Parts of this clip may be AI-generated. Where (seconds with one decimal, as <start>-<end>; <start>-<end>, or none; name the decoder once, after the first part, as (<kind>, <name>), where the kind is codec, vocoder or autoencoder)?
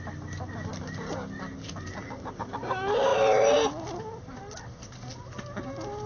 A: none